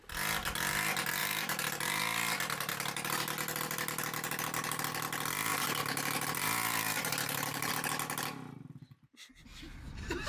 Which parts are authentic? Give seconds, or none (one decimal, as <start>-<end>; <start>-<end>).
0.0-1.2; 2.0-5.5; 7.7-10.3